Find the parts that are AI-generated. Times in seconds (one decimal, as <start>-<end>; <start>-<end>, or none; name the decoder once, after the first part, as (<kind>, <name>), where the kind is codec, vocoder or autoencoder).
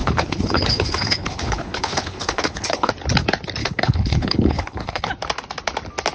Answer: 0.0-2.9 (codec, HILCodec); 3.6-5.1